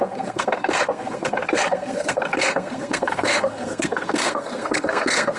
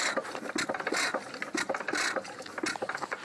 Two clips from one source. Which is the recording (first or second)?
second